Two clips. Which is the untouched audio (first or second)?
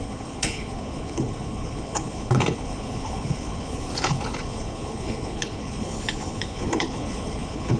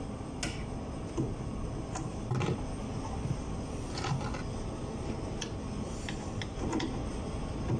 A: second